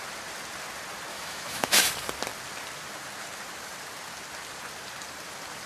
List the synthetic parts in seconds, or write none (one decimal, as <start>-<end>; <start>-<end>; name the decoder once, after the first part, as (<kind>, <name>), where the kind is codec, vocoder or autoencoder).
1.1-1.9 (autoencoder, DAC-VAE)